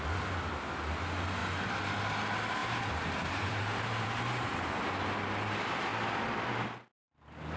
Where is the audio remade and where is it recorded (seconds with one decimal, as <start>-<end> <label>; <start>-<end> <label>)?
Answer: 0.0-2.6 recorded; 2.6-4.7 remade; 4.7-7.6 recorded